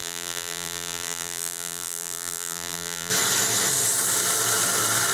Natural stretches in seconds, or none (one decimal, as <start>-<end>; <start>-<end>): 3.1-5.1